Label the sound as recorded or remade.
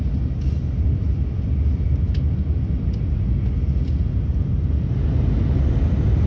recorded